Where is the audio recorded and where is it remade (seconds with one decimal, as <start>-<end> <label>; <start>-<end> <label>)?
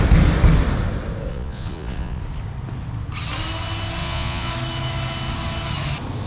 0.0-1.3 recorded; 1.3-2.2 remade; 2.2-4.0 recorded; 4.0-4.5 remade; 4.5-6.3 recorded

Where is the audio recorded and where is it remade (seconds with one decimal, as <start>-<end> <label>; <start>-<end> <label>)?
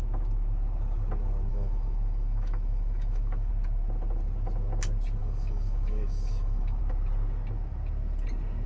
0.0-1.5 recorded; 1.5-3.5 remade; 3.5-5.2 recorded; 5.2-6.8 remade; 6.8-8.7 recorded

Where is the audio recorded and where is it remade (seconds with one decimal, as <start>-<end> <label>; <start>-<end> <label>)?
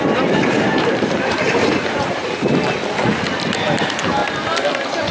0.0-2.2 remade; 2.2-3.1 recorded; 3.1-4.2 remade; 4.2-5.1 recorded